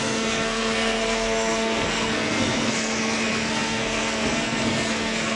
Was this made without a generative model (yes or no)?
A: no